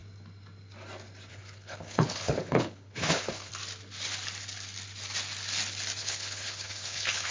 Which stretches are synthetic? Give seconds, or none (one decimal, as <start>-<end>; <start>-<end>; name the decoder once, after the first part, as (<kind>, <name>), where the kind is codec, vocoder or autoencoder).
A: 1.3-3.5 (codec, HILCodec); 6.0-7.3